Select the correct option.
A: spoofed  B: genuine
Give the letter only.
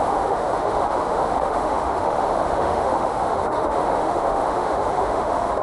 A